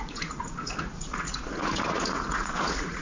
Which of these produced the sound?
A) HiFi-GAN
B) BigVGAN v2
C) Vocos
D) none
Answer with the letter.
C